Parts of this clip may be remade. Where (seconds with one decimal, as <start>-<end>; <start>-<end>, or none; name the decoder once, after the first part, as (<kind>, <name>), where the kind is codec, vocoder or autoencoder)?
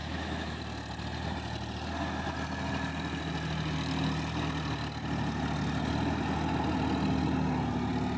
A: 0.0-0.6 (autoencoder, DAC-VAE)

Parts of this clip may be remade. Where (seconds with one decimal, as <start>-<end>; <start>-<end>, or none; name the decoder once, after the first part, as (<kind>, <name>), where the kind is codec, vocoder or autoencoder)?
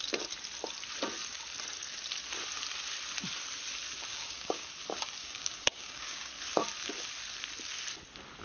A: 4.1-4.7 (codec, DAC); 5.2-6.3